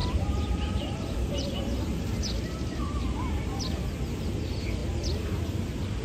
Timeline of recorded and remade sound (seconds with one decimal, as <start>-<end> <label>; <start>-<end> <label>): 0.0-3.6 remade; 3.6-6.0 recorded